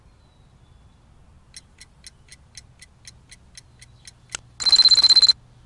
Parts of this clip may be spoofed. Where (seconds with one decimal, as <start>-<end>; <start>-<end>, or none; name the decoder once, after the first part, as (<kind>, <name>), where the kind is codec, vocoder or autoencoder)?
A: none